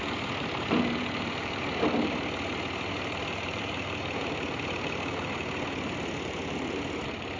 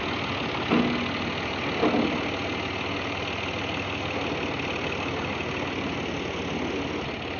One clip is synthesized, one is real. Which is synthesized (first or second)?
first